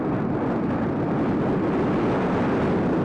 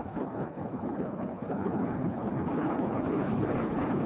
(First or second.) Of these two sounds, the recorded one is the first